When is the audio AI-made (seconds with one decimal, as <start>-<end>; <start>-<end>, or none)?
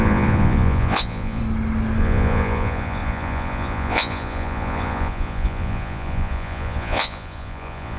0.0-1.4; 2.0-8.0